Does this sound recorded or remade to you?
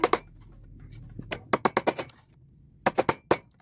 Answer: recorded